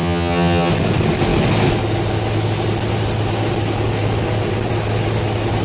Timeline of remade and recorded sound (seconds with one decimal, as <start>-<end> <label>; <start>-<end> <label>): 0.0-0.7 remade; 0.7-5.6 recorded